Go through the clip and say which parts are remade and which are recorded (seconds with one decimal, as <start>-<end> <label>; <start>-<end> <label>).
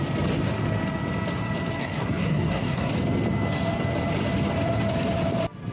0.0-1.8 recorded; 1.8-2.9 remade; 2.9-5.7 recorded